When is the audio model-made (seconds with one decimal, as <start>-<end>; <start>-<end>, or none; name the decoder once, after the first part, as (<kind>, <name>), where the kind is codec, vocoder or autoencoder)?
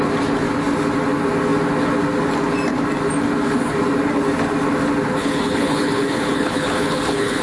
5.2-7.4 (codec, HILCodec)